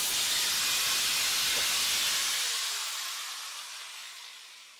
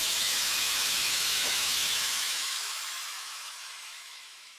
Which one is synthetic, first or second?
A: second